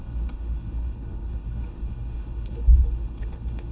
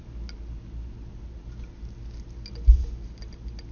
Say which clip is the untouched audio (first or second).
second